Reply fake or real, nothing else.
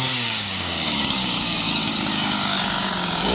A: fake